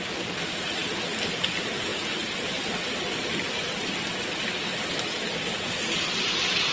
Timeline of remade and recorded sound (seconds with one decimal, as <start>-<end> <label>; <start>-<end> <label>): 0.0-6.7 recorded